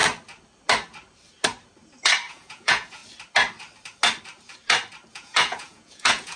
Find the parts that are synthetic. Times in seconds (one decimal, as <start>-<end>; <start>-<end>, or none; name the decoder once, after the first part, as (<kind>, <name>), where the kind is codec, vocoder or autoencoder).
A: 2.3-3.0 (vocoder, Vocos); 5.1-6.4